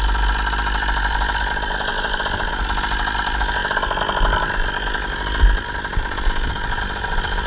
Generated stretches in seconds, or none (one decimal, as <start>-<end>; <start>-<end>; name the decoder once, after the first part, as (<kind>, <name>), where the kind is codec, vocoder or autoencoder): none